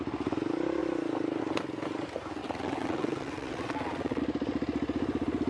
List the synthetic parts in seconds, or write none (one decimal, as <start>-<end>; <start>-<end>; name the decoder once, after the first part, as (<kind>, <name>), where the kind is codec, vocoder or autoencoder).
2.4-4.2 (vocoder, WaveNeXt)